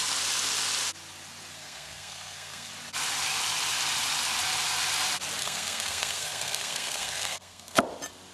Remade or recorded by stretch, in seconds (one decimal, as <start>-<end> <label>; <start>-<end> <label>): 0.0-1.5 recorded; 1.5-2.7 remade; 2.7-5.4 recorded; 5.4-7.8 remade; 7.8-8.3 recorded